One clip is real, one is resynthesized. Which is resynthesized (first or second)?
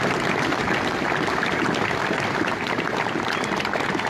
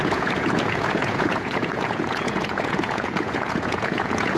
second